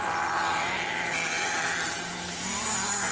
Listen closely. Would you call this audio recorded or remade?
recorded